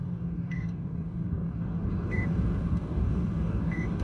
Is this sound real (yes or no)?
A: no